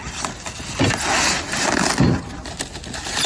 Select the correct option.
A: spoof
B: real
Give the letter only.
B